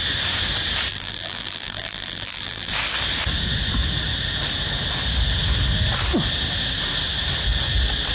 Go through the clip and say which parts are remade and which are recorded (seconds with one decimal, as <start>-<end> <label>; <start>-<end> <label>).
0.0-0.9 recorded; 0.9-2.7 remade; 2.7-8.1 recorded